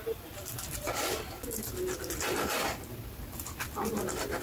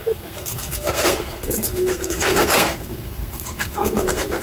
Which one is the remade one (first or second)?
second